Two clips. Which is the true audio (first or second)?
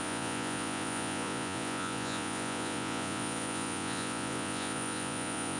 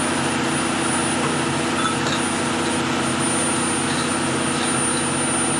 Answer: second